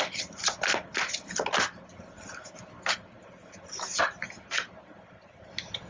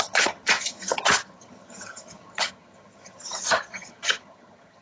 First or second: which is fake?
second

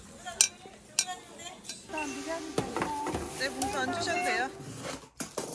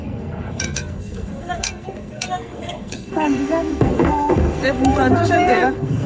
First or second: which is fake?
second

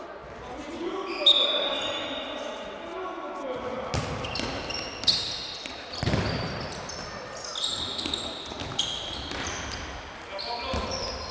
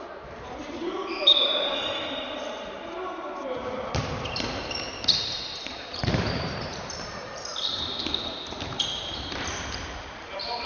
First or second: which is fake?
second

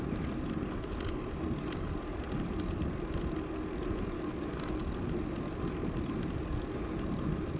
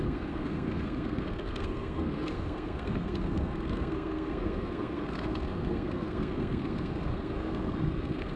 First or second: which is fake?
second